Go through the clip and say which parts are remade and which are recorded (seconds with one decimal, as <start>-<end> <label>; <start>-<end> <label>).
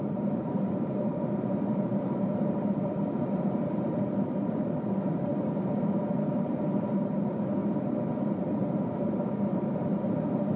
0.0-5.3 remade; 5.3-6.6 recorded; 6.6-7.6 remade; 7.6-8.4 recorded; 8.4-10.6 remade